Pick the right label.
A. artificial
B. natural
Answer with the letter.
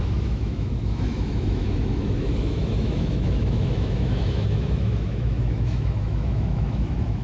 A